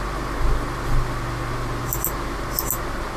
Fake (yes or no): no